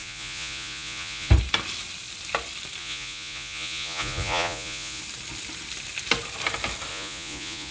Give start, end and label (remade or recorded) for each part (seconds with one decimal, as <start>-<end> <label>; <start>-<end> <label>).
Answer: 0.0-1.3 remade; 1.3-2.8 recorded; 2.8-5.0 remade; 5.0-6.9 recorded; 6.9-7.7 remade